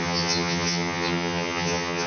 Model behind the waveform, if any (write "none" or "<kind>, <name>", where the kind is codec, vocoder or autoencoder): vocoder, HiFi-GAN